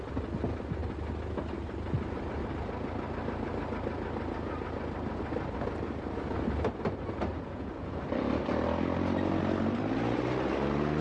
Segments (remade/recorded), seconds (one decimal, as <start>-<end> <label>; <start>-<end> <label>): 0.0-7.3 recorded; 7.3-8.0 remade; 8.0-11.0 recorded